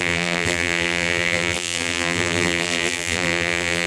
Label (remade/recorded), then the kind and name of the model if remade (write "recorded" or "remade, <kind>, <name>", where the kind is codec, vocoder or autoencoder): remade, vocoder, BigVGAN v2